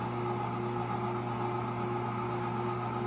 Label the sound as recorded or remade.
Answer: recorded